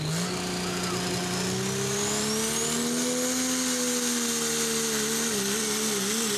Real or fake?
real